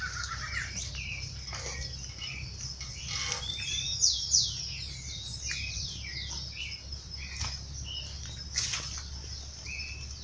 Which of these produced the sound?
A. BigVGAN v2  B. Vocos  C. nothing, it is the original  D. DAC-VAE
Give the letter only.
C